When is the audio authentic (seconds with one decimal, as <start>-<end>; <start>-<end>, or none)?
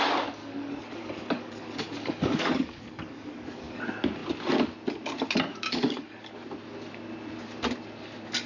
0.0-0.4; 3.8-5.5; 6.2-8.5